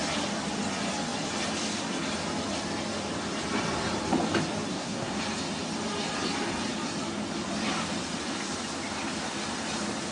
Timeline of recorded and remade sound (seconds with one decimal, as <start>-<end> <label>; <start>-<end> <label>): 0.0-4.7 recorded; 4.7-5.2 remade; 5.2-10.1 recorded